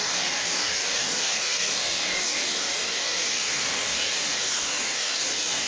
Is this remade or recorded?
remade